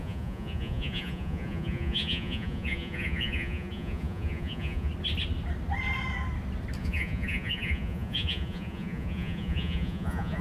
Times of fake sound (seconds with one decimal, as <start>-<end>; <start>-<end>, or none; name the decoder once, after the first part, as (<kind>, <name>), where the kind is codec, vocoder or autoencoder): 0.0-4.9 (vocoder, Vocos); 6.8-10.4